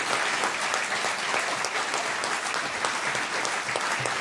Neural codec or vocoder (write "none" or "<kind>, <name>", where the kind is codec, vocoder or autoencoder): none